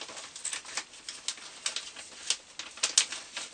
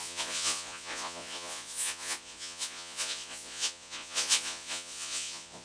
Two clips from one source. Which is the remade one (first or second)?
second